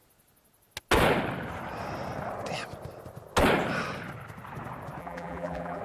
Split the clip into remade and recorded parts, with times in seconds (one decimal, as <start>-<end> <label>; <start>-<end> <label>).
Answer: 0.0-5.0 recorded; 5.0-5.8 remade